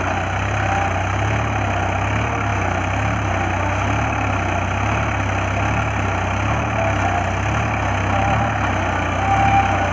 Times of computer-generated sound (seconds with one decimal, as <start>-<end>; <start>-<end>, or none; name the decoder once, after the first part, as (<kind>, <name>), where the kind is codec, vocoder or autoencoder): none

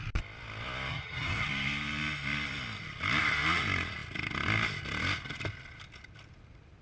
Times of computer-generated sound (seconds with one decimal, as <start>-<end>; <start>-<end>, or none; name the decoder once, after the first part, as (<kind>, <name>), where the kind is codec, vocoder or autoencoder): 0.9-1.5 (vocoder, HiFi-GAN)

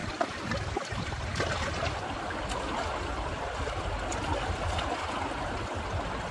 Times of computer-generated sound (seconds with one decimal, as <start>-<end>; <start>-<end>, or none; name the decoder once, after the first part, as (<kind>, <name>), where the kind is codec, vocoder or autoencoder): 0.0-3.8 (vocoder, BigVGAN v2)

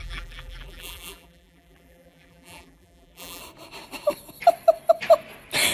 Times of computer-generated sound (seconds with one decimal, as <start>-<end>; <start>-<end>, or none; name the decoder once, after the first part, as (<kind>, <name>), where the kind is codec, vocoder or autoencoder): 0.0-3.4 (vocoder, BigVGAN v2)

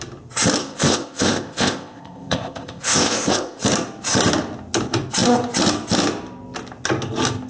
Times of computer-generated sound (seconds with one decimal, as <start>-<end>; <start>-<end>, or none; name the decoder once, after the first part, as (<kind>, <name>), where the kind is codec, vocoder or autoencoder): 0.6-3.6 (codec, ZipCodec)

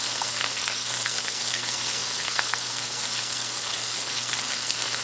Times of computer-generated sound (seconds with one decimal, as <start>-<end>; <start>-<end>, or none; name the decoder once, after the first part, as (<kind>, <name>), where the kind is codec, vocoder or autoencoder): 0.0-5.0 (codec, SNAC)

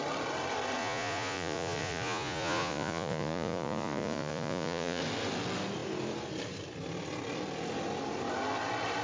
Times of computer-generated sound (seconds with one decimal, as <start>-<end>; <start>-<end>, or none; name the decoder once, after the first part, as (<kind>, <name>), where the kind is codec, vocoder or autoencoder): 0.8-5.0 (vocoder, Vocos)

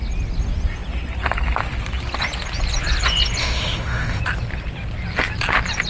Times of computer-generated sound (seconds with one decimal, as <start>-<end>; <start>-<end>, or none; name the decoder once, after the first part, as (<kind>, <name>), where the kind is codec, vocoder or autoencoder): 3.4-4.2 (autoencoder, DAC-VAE)